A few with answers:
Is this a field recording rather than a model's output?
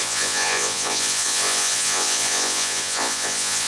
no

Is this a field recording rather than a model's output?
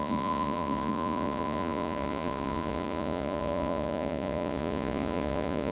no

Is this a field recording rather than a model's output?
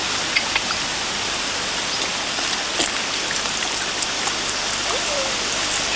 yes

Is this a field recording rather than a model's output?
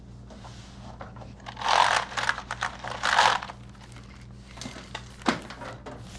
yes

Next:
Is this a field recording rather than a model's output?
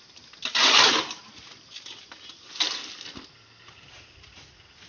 yes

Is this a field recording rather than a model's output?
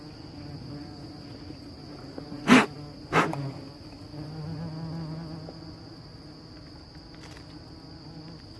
yes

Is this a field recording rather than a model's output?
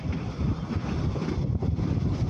yes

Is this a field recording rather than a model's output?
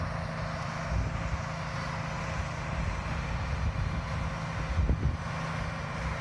yes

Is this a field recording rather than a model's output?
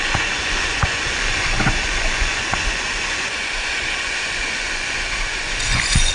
no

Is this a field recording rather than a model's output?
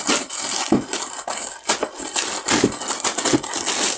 yes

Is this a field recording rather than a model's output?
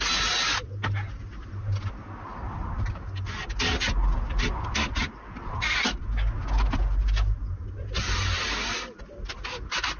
yes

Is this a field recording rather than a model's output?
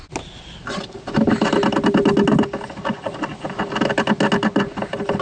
yes